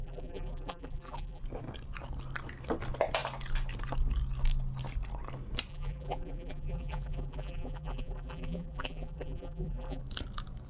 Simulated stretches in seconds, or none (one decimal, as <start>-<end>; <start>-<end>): 0.0-1.4; 5.7-10.0